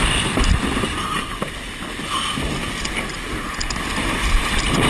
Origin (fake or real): real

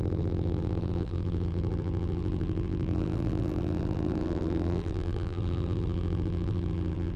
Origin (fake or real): fake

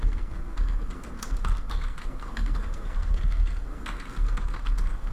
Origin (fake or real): fake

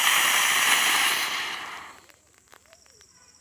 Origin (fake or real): fake